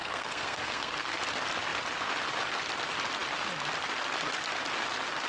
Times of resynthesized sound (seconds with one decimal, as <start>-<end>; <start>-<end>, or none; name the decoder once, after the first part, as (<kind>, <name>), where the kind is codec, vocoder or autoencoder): 0.0-1.2 (codec, SNAC)